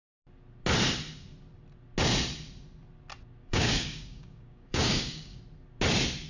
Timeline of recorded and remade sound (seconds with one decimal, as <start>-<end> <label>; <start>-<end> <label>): 0.0-3.4 recorded; 3.4-5.4 remade; 5.4-6.3 recorded